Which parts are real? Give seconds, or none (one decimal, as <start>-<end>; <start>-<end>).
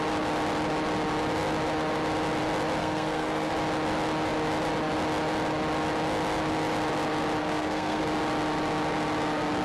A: 0.0-2.8; 3.5-7.4; 8.0-9.6